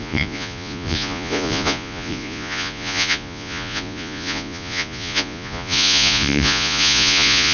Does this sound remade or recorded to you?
remade